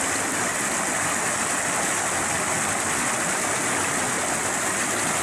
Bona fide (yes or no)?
yes